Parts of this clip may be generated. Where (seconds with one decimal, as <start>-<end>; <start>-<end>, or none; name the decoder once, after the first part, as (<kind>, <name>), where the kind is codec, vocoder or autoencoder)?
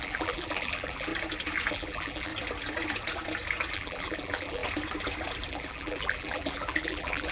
0.0-1.1 (vocoder, BigVGAN v2); 1.7-2.3; 3.7-4.6; 5.5-7.3